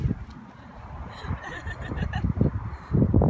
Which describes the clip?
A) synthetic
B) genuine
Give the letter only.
A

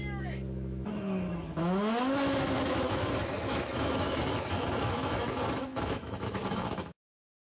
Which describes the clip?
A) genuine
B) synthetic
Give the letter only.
B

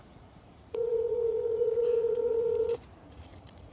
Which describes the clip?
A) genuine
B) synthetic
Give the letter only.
B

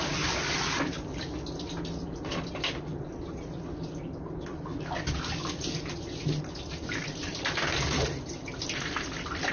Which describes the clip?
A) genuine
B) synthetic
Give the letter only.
A